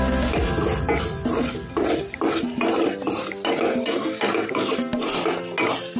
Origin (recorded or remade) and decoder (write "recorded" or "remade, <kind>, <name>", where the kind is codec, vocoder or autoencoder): recorded